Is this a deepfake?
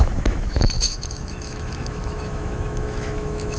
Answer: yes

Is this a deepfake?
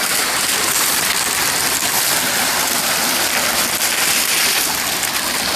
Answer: no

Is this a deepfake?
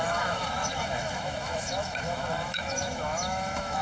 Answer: yes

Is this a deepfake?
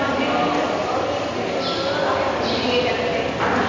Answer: no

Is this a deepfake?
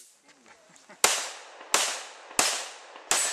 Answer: no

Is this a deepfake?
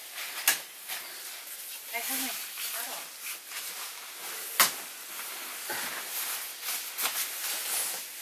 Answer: no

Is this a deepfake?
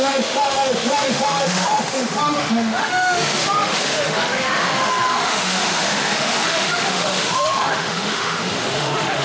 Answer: yes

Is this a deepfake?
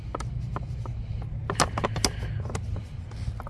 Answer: no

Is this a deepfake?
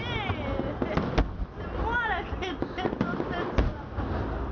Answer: no